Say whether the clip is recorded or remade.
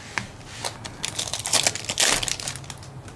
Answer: recorded